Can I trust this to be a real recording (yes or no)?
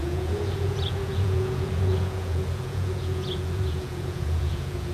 no